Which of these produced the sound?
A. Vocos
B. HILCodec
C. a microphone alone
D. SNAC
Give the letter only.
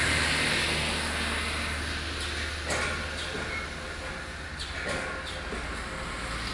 C